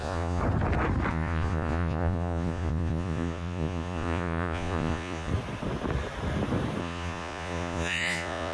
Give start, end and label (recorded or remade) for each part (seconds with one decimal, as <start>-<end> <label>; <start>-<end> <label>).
0.0-0.4 remade; 0.4-1.1 recorded; 1.1-5.3 remade; 5.3-6.8 recorded; 6.8-8.5 remade